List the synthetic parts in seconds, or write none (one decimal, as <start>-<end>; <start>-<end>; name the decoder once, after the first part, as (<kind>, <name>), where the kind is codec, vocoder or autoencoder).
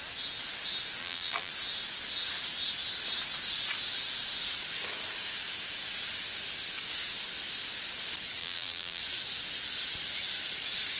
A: 1.0-1.5 (vocoder, BigVGAN v2); 8.4-9.0